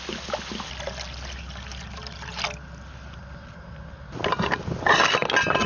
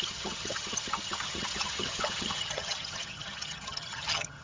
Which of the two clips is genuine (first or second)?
first